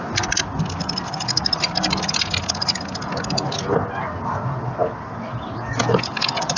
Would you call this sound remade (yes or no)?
no